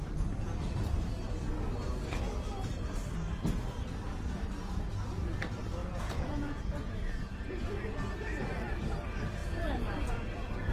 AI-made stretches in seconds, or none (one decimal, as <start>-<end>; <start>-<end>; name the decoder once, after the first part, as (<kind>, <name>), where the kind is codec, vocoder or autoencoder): 5.8-7.7 (vocoder, Vocos); 9.4-10.7

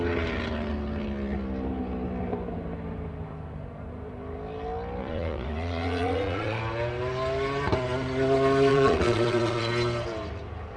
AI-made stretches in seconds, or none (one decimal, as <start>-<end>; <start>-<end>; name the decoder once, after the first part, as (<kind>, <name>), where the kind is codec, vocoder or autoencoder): 5.0-6.6 (vocoder, Vocos); 8.7-9.7

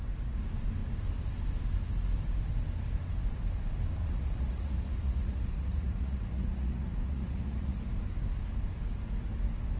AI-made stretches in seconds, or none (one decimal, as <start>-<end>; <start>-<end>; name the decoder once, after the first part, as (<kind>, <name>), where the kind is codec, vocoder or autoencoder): 4.0-7.8 (vocoder, Vocos)

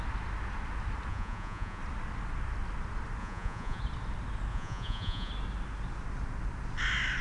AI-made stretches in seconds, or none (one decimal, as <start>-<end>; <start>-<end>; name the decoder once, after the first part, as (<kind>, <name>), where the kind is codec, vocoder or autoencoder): 1.1-1.8 (vocoder, Vocos); 3.2-3.8; 4.5-5.3

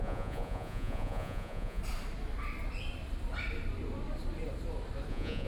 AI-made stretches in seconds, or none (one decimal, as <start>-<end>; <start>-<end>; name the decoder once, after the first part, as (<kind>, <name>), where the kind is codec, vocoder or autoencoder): 0.0-1.8 (vocoder, Vocos); 5.1-5.5

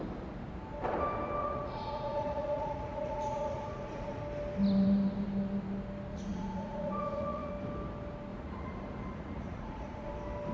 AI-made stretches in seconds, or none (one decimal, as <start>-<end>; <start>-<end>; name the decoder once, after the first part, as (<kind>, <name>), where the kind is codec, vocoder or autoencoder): 1.4-4.2 (vocoder, Vocos); 6.1-7.5; 8.3-10.1